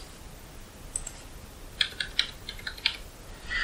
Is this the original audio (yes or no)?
yes